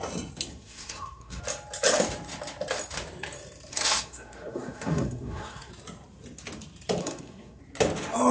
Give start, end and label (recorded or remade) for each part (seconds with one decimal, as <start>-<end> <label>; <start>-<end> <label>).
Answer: 0.0-0.5 recorded; 0.5-1.4 remade; 1.4-3.7 recorded; 3.7-5.7 remade; 5.7-7.0 recorded; 7.0-7.6 remade; 7.6-8.3 recorded